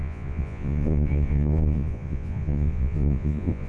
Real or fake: fake